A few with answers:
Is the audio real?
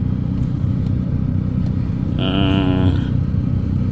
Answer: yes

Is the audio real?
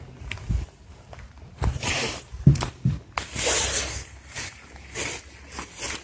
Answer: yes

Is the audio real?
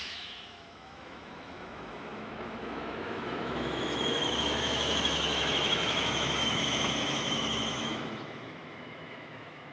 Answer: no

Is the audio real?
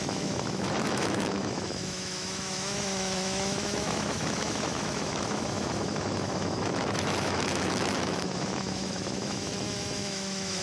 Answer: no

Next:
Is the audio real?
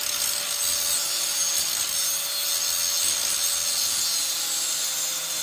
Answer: yes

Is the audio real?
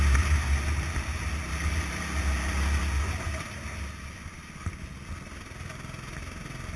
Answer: yes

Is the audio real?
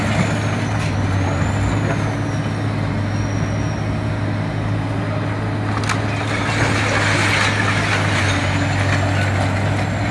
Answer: yes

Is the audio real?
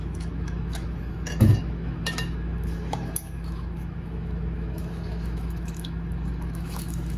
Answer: no